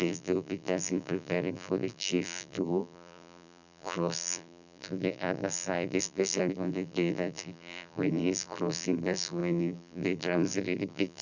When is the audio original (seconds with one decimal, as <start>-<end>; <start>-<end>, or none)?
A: none